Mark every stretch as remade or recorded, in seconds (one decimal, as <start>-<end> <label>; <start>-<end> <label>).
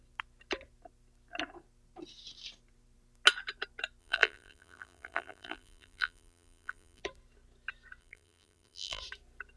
0.0-4.0 recorded; 4.0-7.0 remade; 7.0-8.0 recorded; 8.0-9.0 remade; 9.0-9.6 recorded